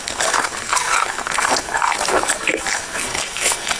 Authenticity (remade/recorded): remade